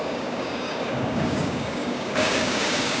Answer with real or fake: fake